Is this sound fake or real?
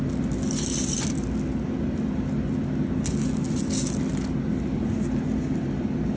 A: real